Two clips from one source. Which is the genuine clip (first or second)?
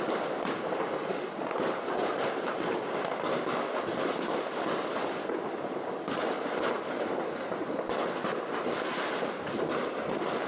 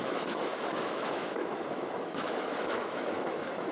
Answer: first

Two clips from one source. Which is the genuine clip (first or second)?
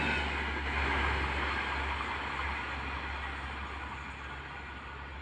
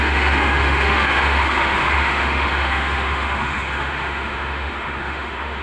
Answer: first